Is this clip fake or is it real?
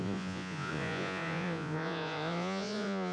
fake